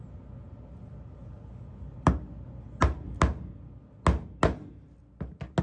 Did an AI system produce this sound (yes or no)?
no